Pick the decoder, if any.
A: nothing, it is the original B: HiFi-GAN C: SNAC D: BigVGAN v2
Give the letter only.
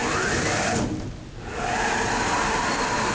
A